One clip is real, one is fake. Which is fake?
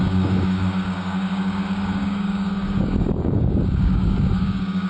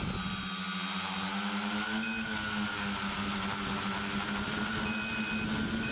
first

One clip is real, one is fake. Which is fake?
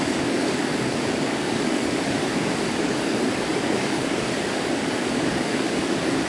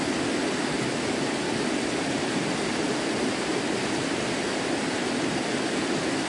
first